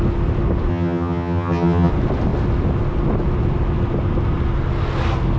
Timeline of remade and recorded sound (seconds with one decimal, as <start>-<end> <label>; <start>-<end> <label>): 0.0-0.7 recorded; 0.7-1.9 remade; 1.9-5.4 recorded